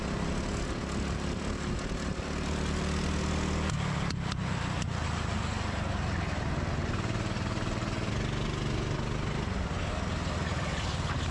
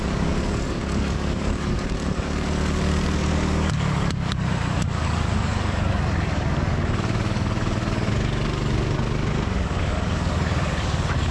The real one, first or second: first